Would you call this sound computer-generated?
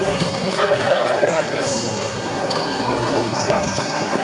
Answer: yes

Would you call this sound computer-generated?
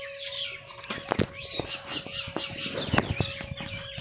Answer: no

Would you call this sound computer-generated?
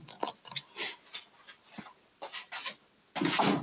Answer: no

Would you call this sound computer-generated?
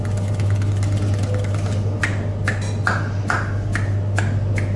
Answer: no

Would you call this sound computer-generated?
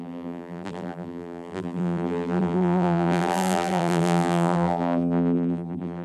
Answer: yes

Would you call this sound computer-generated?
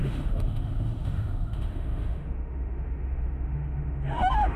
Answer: yes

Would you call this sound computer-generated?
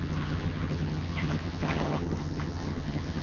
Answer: yes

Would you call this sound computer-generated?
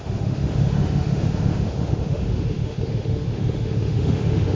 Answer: yes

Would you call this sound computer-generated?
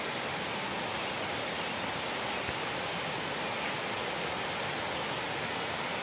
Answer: no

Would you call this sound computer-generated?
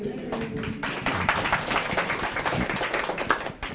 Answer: no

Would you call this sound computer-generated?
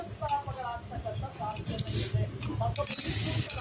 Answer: no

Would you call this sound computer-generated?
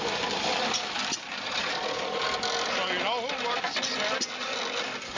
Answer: no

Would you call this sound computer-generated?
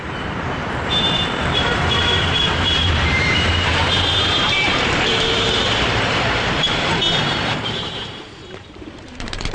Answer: yes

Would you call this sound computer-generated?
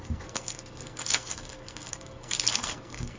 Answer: yes